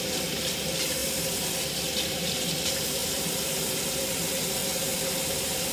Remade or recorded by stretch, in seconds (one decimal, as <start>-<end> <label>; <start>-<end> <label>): 0.0-1.0 recorded; 1.0-2.3 remade; 2.3-3.0 recorded; 3.0-3.9 remade; 3.9-5.7 recorded